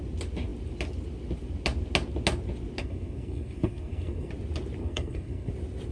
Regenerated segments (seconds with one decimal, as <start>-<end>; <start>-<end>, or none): 2.8-4.3; 4.8-5.5